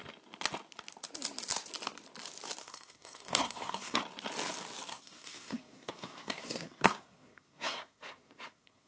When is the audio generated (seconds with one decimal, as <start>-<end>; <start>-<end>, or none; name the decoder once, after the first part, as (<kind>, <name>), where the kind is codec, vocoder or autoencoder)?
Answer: 2.6-4.0 (codec, SNAC); 4.9-8.9